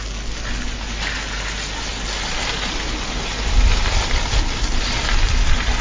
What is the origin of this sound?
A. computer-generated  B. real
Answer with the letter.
B